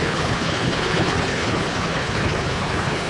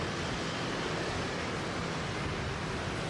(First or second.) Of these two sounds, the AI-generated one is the first